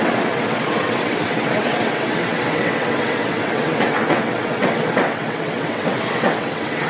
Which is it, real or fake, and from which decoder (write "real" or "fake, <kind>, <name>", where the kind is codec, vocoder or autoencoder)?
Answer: fake, vocoder, WaveNeXt